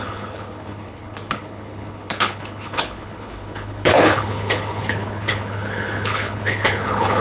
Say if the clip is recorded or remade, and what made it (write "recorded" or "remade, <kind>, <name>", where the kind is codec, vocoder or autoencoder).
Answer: remade, codec, HILCodec